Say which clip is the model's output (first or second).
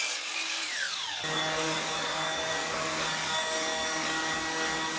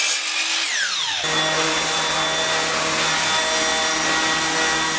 first